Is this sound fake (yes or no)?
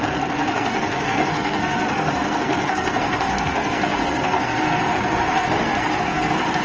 yes